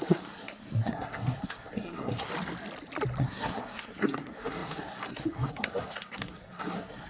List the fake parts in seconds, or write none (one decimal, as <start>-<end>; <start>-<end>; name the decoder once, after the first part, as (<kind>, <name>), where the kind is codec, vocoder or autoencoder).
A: 0.0-2.3 (codec, SNAC); 3.2-7.1